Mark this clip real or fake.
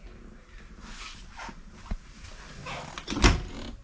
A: real